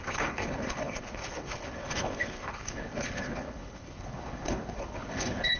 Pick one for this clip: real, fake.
fake